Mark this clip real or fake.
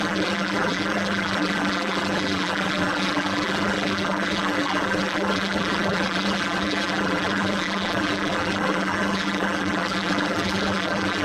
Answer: fake